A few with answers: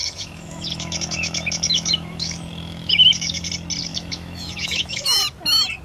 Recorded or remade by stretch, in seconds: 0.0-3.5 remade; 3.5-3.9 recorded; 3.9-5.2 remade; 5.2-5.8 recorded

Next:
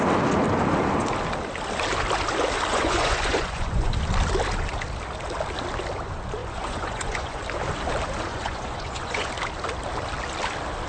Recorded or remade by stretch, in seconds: 0.0-2.7 recorded; 2.7-3.9 remade; 3.9-6.4 recorded; 6.4-7.4 remade; 7.4-8.3 recorded; 8.3-9.3 remade; 9.3-10.9 recorded

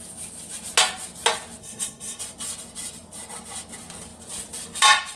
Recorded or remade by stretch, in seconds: 0.0-1.6 recorded; 1.6-2.2 remade; 2.2-5.2 recorded

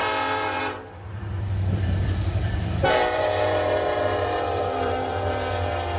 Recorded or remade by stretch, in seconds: 0.0-6.0 remade

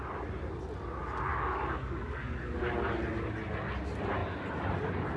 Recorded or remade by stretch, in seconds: 0.0-1.3 recorded; 1.3-2.6 remade; 2.6-5.2 recorded

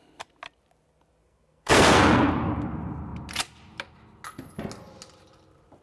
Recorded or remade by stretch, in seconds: 0.0-1.2 recorded; 1.2-2.3 remade; 2.3-5.8 recorded

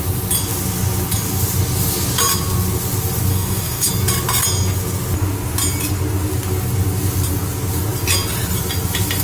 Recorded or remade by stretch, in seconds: 0.0-3.3 recorded; 3.3-3.9 remade; 3.9-9.2 recorded

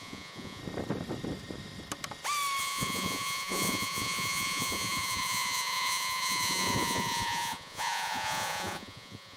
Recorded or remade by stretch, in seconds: 0.0-0.6 remade; 0.6-2.6 recorded; 2.6-9.4 remade